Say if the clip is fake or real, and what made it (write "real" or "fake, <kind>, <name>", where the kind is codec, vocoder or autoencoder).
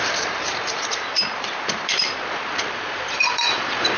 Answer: fake, vocoder, BigVGAN v2